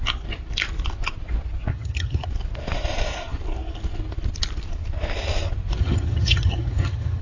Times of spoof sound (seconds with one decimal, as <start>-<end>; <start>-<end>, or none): 1.7-2.3; 5.8-7.2